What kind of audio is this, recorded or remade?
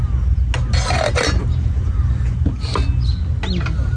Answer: recorded